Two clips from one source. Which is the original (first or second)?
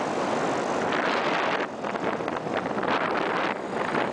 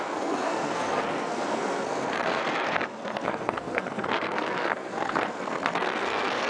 first